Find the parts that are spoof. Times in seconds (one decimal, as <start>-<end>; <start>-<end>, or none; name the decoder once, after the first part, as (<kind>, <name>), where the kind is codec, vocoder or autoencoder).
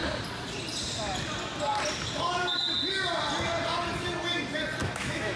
4.8-5.4 (autoencoder, DAC-VAE)